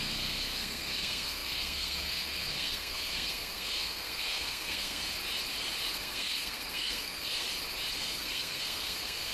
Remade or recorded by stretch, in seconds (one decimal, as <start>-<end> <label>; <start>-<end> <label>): 0.0-5.0 remade; 5.0-5.9 recorded; 5.9-7.5 remade; 7.5-8.0 recorded; 8.0-9.3 remade